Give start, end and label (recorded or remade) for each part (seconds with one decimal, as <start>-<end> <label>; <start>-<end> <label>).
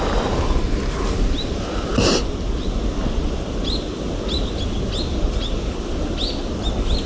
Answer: 0.0-7.1 recorded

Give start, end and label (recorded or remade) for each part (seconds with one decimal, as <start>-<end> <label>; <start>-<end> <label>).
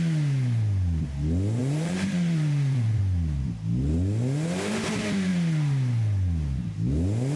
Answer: 0.0-1.6 recorded; 1.6-3.0 remade; 3.0-7.4 recorded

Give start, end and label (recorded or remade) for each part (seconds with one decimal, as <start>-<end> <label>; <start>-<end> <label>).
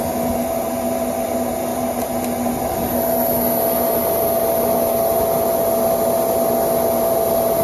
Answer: 0.0-7.6 recorded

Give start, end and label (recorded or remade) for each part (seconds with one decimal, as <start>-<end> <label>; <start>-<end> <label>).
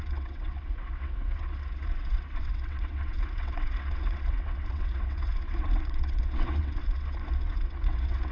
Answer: 0.0-8.3 remade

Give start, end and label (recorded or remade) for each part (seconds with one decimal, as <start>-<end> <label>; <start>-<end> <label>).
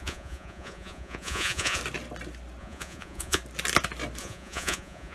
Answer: 0.0-1.8 remade; 1.8-2.6 recorded; 2.6-3.4 remade; 3.4-4.2 recorded; 4.2-5.1 remade